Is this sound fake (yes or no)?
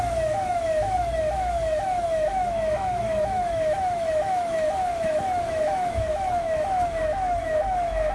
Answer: yes